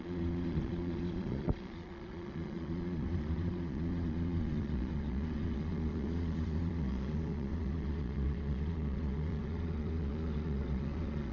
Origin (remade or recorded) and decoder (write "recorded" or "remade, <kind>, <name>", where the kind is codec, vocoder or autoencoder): remade, vocoder, Vocos